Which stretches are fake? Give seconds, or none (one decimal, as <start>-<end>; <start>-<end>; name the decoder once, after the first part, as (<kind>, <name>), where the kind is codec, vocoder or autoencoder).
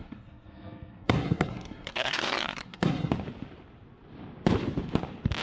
0.0-3.1 (codec, SNAC)